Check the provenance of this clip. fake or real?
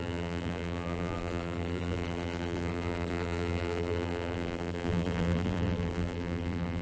fake